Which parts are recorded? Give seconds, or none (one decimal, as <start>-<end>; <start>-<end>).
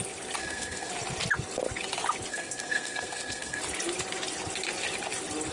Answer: 0.0-0.4; 0.9-2.3; 3.6-5.5